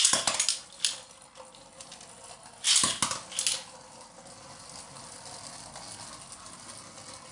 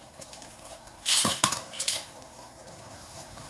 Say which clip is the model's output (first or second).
second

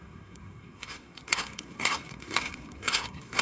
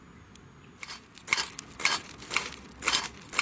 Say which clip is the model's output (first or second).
first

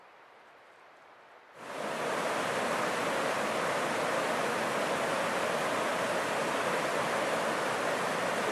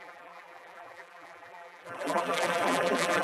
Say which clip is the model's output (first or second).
second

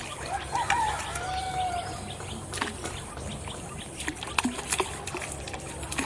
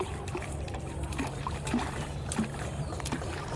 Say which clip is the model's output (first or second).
second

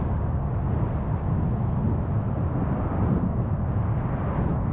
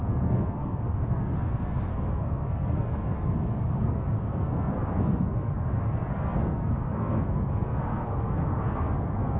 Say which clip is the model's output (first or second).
second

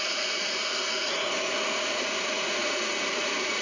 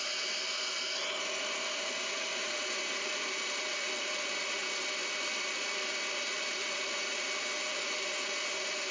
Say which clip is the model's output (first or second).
first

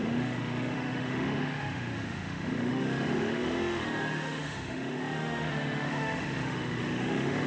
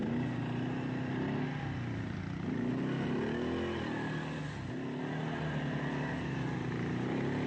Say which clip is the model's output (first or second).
first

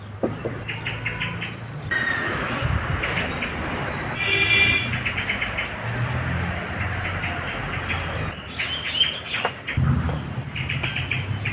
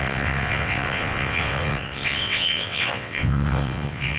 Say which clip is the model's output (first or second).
second